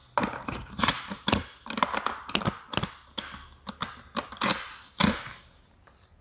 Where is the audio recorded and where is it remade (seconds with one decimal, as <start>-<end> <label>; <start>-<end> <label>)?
0.0-6.2 recorded

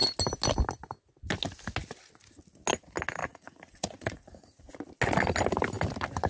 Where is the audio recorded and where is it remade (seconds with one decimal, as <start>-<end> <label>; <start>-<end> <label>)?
0.0-3.2 recorded; 3.2-4.7 remade; 4.7-6.3 recorded

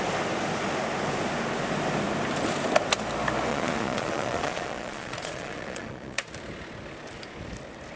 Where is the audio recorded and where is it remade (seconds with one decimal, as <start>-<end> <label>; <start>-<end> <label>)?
0.0-3.5 recorded; 3.5-6.3 remade; 6.3-8.0 recorded

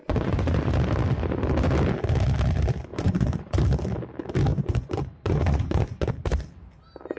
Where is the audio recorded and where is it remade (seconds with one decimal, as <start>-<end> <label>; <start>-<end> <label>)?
0.0-0.7 remade; 0.7-2.9 recorded; 2.9-3.6 remade; 3.6-4.5 recorded; 4.5-6.1 remade; 6.1-7.2 recorded

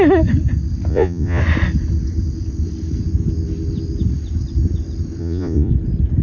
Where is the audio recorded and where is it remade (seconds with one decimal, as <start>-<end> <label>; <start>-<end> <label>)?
0.0-0.9 recorded; 0.9-1.4 remade; 1.4-5.2 recorded; 5.2-5.7 remade; 5.7-6.2 recorded

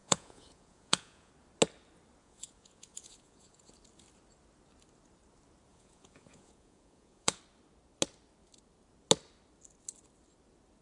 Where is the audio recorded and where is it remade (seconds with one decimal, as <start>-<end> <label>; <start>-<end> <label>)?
0.0-1.3 remade; 1.3-2.2 recorded; 2.2-3.7 remade; 3.7-5.7 recorded; 5.7-7.4 remade; 7.4-10.8 recorded